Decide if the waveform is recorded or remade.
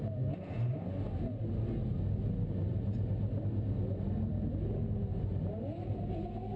recorded